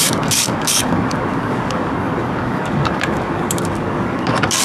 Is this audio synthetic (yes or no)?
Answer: yes